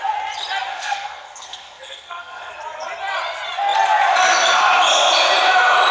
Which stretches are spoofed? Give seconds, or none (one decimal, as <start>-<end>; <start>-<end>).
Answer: 0.7-2.5

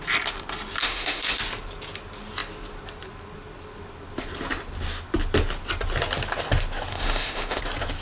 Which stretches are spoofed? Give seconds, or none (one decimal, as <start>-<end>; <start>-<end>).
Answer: 0.8-1.4; 6.9-7.6